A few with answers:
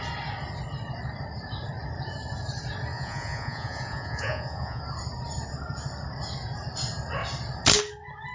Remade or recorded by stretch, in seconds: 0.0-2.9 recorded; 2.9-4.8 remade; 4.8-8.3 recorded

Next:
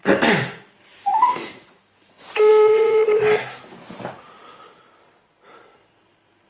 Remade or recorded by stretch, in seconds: 0.0-0.9 recorded; 0.9-1.8 remade; 1.8-2.5 recorded; 2.5-3.0 remade; 3.0-6.5 recorded

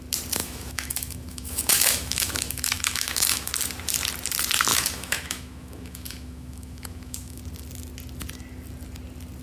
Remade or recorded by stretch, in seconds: 0.0-0.4 recorded; 0.4-3.5 remade; 3.5-4.7 recorded; 4.7-7.4 remade; 7.4-9.4 recorded